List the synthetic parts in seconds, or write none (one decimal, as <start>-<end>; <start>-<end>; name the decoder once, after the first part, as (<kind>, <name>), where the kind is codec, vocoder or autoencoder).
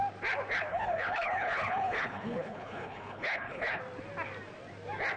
0.7-3.8 (codec, HILCodec)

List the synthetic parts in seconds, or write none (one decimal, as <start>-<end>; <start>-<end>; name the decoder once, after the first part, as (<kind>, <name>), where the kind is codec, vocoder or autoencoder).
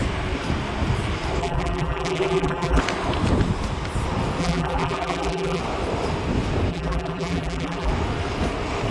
1.4-2.8 (vocoder, BigVGAN v2); 4.4-5.6; 6.7-7.9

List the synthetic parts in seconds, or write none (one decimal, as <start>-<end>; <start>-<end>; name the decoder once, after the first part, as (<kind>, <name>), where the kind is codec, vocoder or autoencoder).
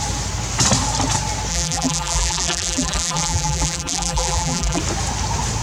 1.5-4.8 (vocoder, BigVGAN v2)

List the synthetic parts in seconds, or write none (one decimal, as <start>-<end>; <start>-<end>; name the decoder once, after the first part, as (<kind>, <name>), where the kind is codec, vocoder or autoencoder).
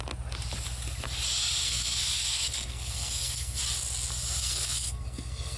1.6-3.6 (codec, SNAC); 4.4-5.6